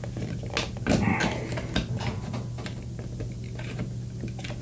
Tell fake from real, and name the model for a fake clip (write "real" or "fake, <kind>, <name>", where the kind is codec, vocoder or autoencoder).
real